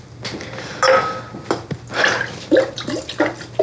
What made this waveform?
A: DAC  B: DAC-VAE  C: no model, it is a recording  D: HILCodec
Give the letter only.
C